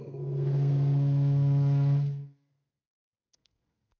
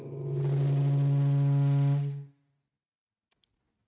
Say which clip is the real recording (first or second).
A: second